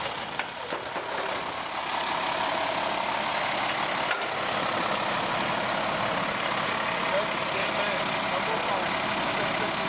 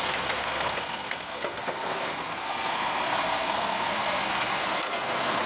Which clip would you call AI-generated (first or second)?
second